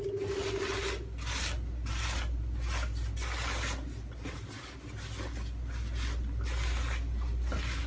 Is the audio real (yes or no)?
yes